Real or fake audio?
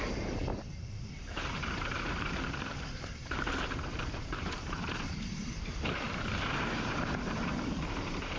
fake